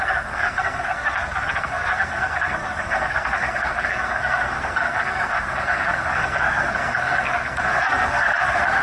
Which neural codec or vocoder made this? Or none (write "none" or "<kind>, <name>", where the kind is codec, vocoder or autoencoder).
codec, SNAC